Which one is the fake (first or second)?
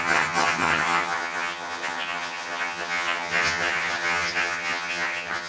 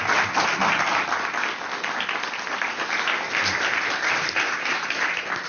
first